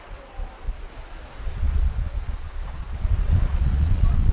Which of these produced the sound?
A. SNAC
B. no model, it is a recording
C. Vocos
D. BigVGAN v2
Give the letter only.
C